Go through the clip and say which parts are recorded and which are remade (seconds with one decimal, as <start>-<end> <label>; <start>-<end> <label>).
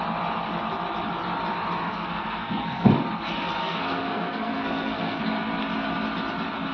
0.0-1.9 recorded; 1.9-2.9 remade; 2.9-3.6 recorded; 3.6-5.2 remade; 5.2-6.7 recorded